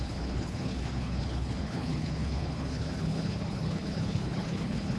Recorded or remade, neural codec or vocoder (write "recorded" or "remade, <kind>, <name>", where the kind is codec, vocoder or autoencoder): remade, codec, HILCodec